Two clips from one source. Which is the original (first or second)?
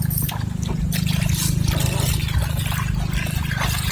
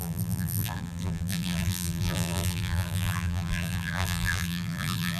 first